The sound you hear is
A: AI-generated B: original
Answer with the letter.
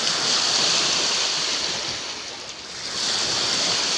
B